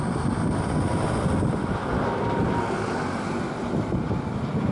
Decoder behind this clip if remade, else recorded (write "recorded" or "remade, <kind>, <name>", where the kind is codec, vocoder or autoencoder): recorded